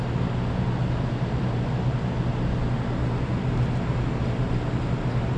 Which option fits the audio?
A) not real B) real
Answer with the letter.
B